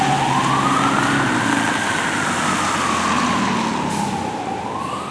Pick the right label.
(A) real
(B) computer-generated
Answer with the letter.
A